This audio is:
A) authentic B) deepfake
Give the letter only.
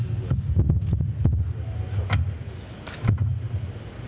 A